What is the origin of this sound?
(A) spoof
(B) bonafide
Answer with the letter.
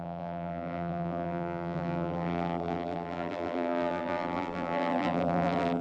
A